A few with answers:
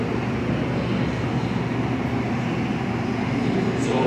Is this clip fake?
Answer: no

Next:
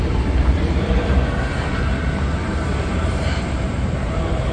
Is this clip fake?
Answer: yes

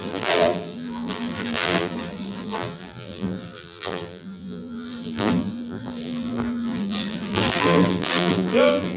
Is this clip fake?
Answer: yes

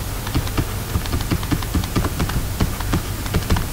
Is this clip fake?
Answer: no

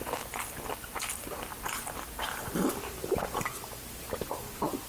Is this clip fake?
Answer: yes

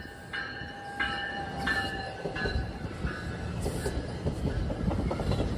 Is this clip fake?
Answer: no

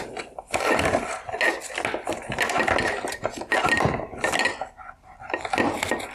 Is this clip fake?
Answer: no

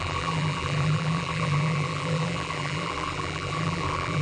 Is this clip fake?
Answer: yes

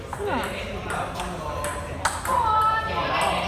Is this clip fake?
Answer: no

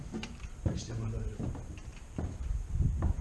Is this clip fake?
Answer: yes